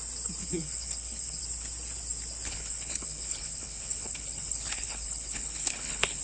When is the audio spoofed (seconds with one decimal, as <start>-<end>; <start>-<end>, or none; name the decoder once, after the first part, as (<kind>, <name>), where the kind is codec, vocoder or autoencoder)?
0.4-1.4 (codec, HILCodec); 2.5-6.2